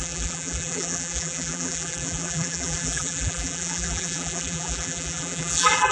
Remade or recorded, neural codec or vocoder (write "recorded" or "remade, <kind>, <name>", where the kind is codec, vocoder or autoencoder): remade, vocoder, BigVGAN v2